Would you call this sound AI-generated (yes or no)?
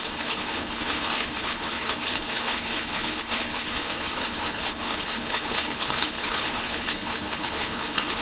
yes